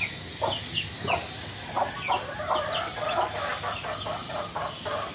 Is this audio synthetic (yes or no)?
no